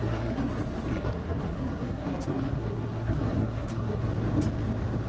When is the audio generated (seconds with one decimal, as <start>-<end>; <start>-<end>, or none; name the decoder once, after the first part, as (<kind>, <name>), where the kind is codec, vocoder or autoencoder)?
0.0-0.5 (codec, SNAC); 0.9-4.0